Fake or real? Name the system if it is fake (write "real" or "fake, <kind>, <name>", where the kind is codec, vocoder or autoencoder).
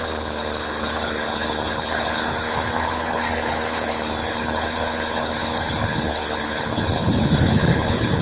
fake, codec, HILCodec